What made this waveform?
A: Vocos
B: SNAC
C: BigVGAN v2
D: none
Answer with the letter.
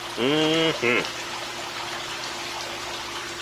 D